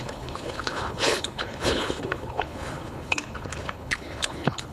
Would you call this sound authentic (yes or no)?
no